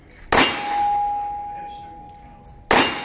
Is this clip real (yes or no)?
yes